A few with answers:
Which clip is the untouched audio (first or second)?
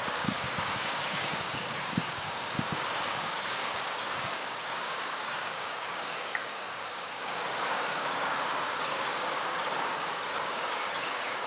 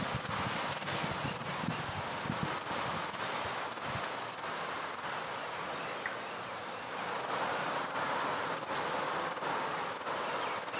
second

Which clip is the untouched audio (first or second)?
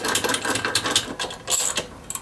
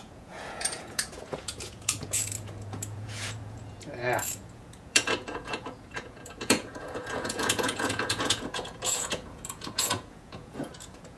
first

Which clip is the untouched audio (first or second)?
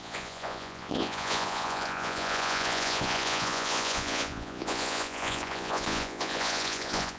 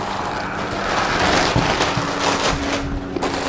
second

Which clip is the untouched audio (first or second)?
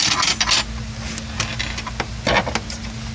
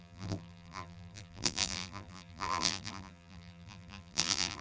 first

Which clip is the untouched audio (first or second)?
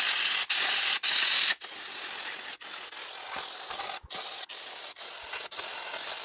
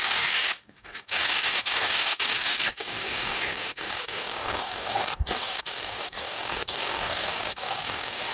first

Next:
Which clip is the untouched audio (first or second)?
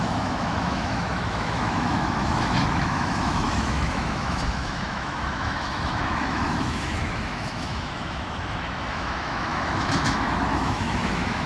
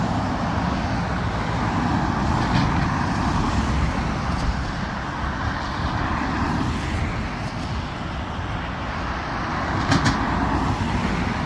second